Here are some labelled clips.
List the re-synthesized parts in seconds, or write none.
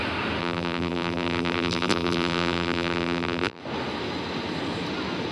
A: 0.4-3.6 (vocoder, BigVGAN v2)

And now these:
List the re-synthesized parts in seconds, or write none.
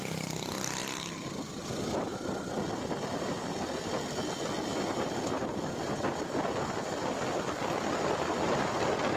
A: none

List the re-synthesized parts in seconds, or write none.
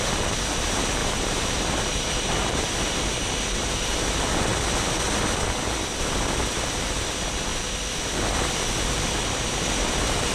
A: 1.0-1.5 (vocoder, BigVGAN v2)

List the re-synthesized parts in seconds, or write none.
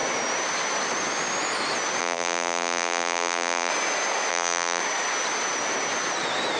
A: 2.0-3.7 (vocoder, BigVGAN v2); 4.3-4.8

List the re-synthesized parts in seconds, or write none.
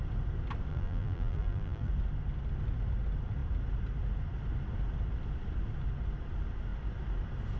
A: 0.7-1.9 (vocoder, BigVGAN v2)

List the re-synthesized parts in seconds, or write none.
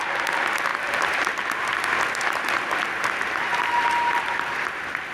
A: 3.5-4.1 (vocoder, BigVGAN v2)